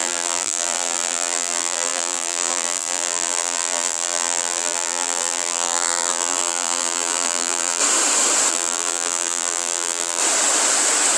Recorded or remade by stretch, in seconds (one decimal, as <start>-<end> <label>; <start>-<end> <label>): 0.0-7.8 remade; 7.8-8.5 recorded; 8.5-10.2 remade; 10.2-11.2 recorded